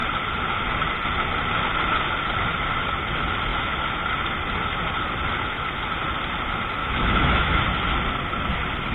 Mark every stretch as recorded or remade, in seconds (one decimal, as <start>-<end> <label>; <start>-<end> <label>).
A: 0.0-6.8 recorded; 6.8-7.6 remade; 7.6-8.9 recorded